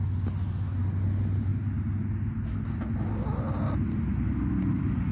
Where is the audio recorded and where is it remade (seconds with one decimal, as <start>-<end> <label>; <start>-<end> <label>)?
0.0-5.1 recorded